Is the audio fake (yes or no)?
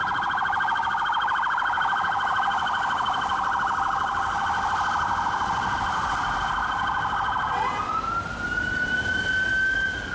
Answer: no